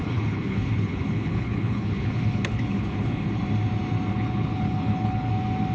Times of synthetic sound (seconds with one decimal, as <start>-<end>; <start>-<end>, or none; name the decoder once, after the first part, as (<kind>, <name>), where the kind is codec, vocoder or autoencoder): 0.0-3.4 (codec, HILCodec); 4.1-5.3